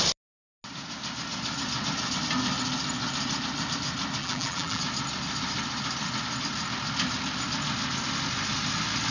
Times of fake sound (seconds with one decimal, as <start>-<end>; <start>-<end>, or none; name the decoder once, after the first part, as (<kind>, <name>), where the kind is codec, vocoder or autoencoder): 4.2-4.8 (vocoder, BigVGAN v2)